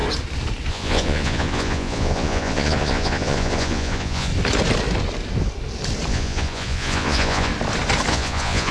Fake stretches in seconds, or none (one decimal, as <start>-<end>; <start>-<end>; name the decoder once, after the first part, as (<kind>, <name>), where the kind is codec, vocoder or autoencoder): 0.7-4.3 (vocoder, Vocos); 6.1-7.5; 8.1-8.7